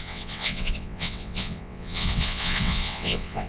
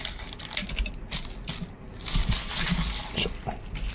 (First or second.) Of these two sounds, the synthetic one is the first